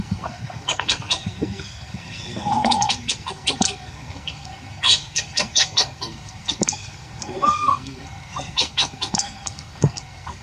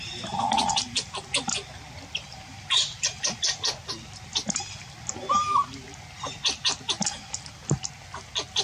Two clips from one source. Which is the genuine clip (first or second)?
second